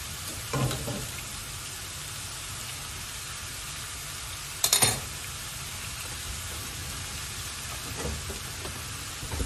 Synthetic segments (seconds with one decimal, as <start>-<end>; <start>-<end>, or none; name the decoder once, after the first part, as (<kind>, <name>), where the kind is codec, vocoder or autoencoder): 0.0-1.4 (vocoder, BigVGAN v2); 5.8-6.8; 9.1-9.5